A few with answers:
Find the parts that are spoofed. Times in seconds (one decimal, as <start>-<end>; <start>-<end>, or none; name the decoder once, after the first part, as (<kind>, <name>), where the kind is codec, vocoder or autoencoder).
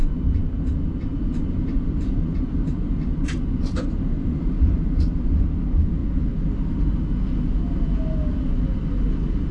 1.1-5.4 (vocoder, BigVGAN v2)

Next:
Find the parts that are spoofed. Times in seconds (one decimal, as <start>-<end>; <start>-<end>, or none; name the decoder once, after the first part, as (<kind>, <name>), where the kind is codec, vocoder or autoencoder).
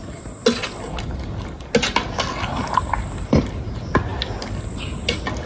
none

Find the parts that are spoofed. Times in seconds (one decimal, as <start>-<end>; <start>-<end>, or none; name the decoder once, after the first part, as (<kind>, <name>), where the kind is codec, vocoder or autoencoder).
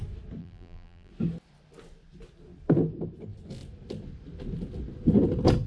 0.4-1.1 (vocoder, BigVGAN v2)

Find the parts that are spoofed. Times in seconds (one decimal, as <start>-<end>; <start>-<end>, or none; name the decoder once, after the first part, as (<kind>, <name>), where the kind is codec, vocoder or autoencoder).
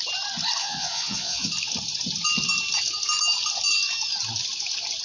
0.6-1.5 (vocoder, Vocos)